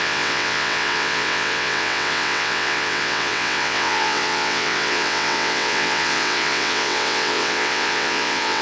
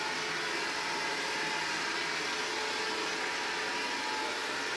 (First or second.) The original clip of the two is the second